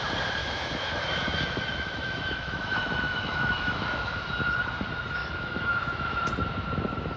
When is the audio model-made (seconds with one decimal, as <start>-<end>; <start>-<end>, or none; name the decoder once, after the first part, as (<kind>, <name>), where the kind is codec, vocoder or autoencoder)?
0.4-4.2 (autoencoder, DAC-VAE); 5.2-6.2